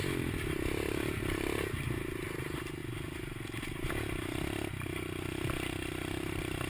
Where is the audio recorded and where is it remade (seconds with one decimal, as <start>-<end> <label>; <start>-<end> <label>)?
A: 0.0-6.7 recorded